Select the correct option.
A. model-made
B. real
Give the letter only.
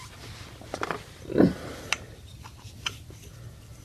B